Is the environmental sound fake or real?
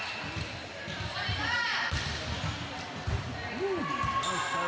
real